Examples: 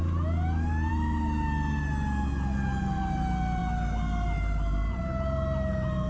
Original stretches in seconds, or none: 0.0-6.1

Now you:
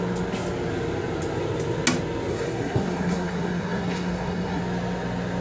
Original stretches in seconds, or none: 0.0-2.3; 4.6-5.4

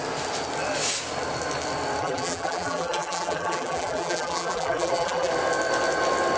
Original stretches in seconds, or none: 0.0-2.0; 5.3-6.4

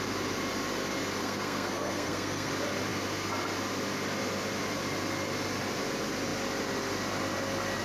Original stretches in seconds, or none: 0.0-1.2; 2.5-7.8

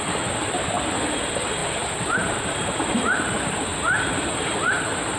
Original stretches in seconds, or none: 0.0-5.2

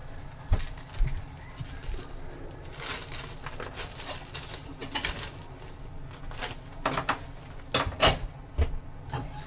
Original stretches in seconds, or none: 0.0-9.5